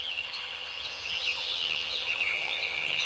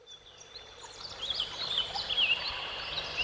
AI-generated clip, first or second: first